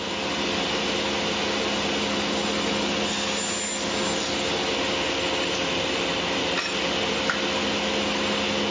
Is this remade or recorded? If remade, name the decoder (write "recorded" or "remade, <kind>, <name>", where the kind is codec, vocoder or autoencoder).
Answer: recorded